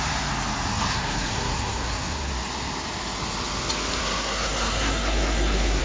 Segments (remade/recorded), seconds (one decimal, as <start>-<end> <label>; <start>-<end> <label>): 0.0-0.9 recorded; 0.9-2.3 remade; 2.3-4.0 recorded; 4.0-5.8 remade